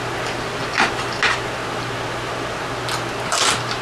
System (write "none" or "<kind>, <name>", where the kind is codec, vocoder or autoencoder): none